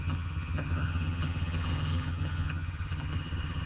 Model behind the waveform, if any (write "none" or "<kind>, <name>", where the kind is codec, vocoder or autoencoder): vocoder, HiFi-GAN